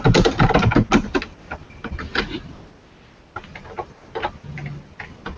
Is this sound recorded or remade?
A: recorded